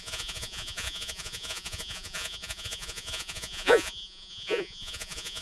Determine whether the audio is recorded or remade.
remade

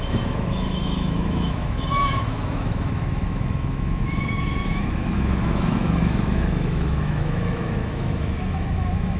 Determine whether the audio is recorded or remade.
remade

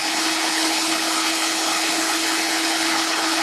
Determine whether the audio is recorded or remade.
remade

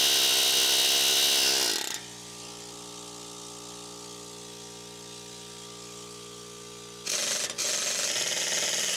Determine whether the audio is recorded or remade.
recorded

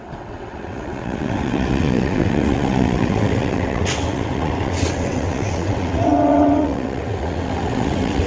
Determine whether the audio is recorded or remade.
remade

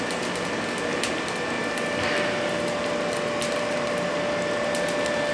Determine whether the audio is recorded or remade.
remade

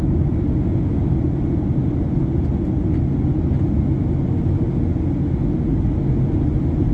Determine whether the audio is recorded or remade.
recorded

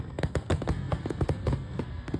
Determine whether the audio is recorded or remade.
remade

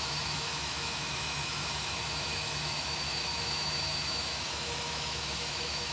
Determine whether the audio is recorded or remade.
remade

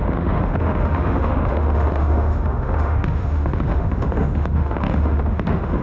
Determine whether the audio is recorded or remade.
remade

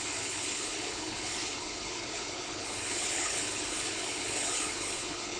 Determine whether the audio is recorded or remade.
remade